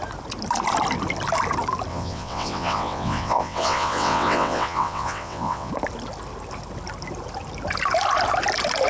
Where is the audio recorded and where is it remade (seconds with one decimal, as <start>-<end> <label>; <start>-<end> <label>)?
0.0-1.9 recorded; 1.9-5.7 remade; 5.7-8.9 recorded